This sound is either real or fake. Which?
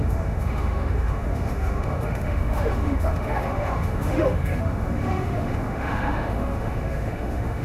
fake